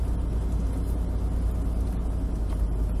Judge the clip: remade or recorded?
recorded